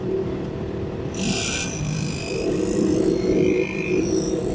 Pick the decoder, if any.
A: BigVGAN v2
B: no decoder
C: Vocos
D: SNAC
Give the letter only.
A